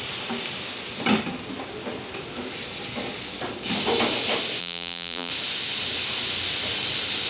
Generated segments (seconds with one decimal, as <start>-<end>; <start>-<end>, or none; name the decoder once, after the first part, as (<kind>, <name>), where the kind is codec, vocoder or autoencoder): 4.6-5.3 (vocoder, BigVGAN v2)